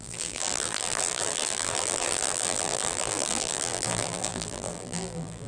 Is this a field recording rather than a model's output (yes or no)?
no